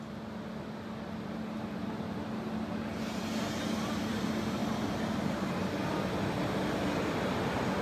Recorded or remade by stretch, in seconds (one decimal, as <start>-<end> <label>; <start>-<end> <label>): 0.0-4.6 recorded; 4.6-5.7 remade; 5.7-7.8 recorded